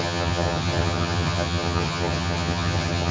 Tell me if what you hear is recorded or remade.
remade